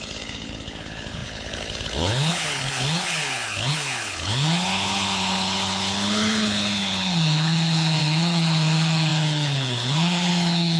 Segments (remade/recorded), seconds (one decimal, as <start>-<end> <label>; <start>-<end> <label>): 0.0-10.8 remade